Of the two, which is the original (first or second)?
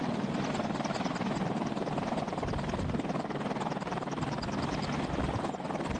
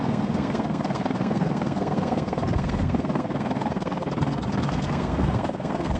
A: first